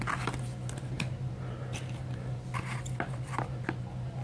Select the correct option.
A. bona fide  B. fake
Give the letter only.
A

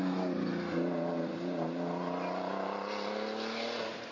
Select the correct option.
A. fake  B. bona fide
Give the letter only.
B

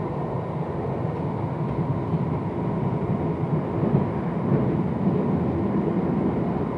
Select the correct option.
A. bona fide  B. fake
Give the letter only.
A